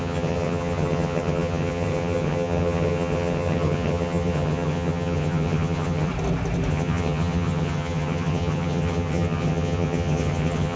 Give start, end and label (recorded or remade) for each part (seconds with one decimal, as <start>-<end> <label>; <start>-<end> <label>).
0.0-6.1 remade; 6.1-6.7 recorded; 6.7-10.8 remade